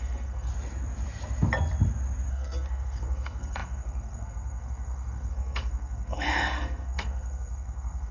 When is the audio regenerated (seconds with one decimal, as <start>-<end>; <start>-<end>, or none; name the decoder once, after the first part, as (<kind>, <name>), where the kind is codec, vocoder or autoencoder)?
0.0-0.5 (codec, SNAC); 2.3-8.1